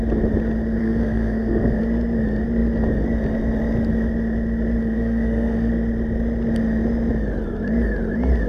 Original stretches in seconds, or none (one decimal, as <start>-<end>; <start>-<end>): 0.0-0.8; 1.8-4.8; 5.7-8.5

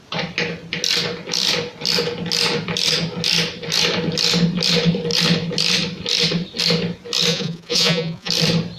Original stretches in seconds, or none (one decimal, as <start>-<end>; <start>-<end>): 0.0-7.3; 8.3-8.8

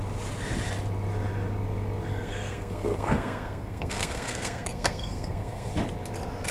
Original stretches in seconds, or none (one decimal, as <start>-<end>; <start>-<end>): 0.0-2.1; 5.7-6.5